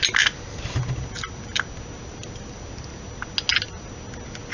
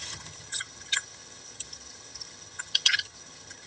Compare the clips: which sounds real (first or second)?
first